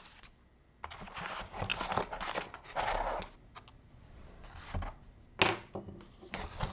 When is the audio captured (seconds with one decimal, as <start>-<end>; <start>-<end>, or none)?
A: 0.0-6.7